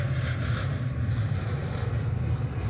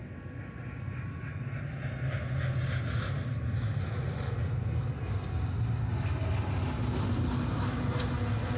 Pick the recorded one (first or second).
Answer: second